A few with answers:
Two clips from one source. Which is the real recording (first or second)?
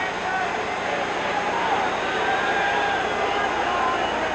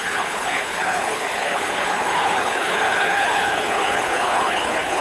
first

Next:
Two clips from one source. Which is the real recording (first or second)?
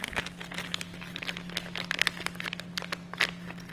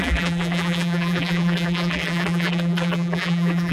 first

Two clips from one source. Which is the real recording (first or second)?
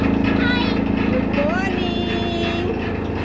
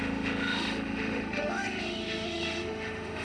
first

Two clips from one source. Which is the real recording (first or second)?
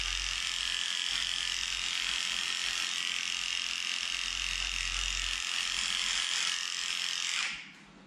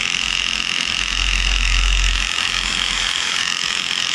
first